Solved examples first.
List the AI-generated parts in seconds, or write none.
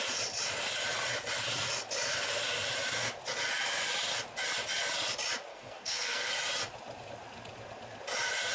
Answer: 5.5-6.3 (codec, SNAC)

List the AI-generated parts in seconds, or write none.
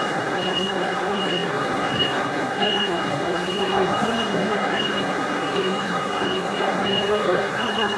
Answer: 0.0-8.0 (codec, SNAC)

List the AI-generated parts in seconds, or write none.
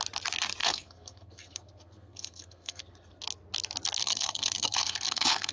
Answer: 0.6-3.2 (codec, SNAC); 4.0-5.5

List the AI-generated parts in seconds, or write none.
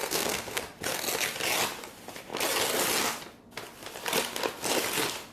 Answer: 0.0-0.6 (codec, SNAC)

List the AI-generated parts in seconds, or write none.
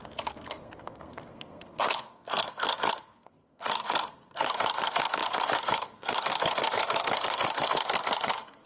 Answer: 0.0-8.7 (codec, SNAC)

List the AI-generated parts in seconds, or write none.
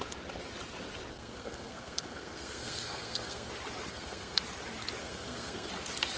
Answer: 1.1-3.5 (codec, SNAC); 3.9-4.4; 5.0-5.7